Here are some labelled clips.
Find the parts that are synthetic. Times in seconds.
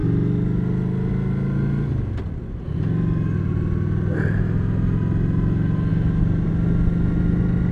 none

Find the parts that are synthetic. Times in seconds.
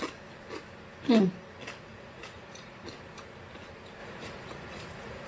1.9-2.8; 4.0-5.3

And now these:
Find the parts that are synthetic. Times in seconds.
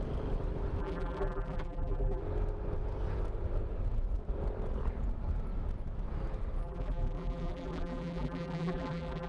0.8-2.2; 6.6-9.3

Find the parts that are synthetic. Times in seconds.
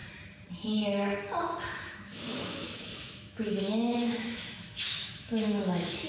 1.8-6.1